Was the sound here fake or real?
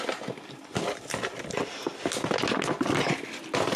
real